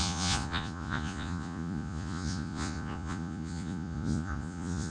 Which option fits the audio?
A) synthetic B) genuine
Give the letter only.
A